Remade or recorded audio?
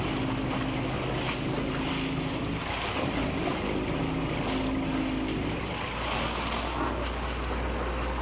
recorded